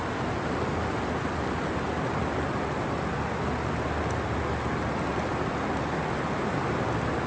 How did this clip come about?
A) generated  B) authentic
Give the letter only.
B